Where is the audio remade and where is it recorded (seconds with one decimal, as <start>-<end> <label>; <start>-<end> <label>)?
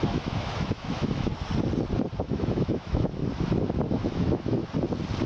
0.0-1.3 remade; 1.3-2.2 recorded; 2.2-3.2 remade; 3.2-3.9 recorded; 3.9-4.6 remade; 4.6-5.3 recorded